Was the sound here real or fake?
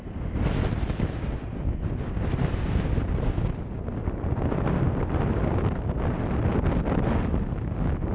real